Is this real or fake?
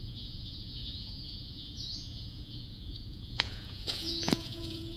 fake